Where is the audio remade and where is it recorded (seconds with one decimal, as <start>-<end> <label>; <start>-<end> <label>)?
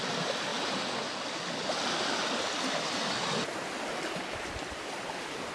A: 0.0-5.5 recorded